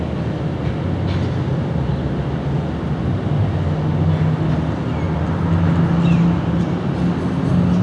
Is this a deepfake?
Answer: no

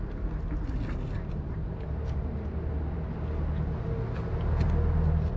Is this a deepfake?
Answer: no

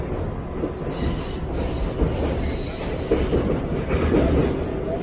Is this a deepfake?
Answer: no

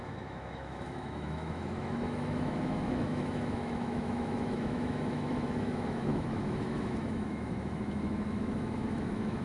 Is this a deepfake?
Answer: yes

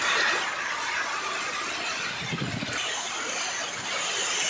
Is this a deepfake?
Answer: no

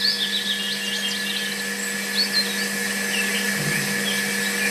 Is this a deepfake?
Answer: no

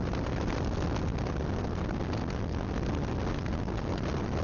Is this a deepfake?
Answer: no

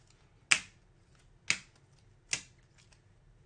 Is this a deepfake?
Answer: no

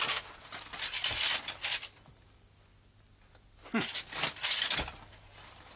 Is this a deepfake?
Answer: no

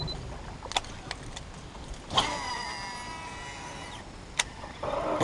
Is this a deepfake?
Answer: no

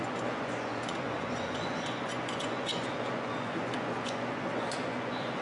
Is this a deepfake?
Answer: yes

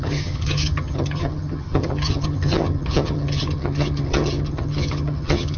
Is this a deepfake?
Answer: yes